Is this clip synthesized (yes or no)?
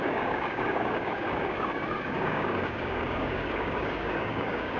yes